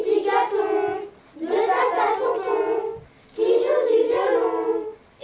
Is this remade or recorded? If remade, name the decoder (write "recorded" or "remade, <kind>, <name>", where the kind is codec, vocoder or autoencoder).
recorded